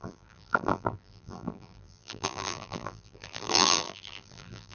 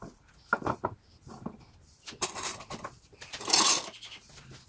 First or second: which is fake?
first